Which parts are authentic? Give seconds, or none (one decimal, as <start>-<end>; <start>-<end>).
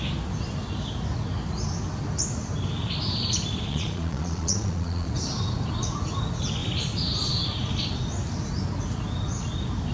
0.0-3.7; 5.1-9.9